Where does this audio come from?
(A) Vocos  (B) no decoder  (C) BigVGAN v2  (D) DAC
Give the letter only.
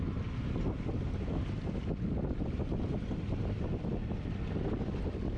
B